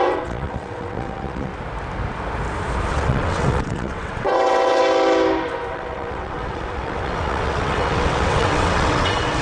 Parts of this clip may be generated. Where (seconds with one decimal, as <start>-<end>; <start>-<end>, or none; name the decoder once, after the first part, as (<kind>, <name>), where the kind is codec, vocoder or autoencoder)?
0.0-1.5 (vocoder, WaveNeXt); 2.9-4.8; 5.7-9.4